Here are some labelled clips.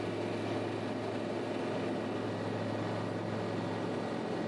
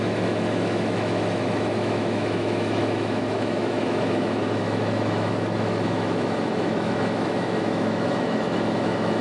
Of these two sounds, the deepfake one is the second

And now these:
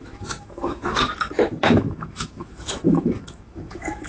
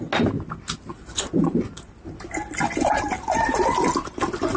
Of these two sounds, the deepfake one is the first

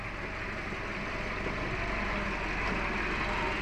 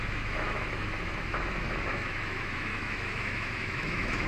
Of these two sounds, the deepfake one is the second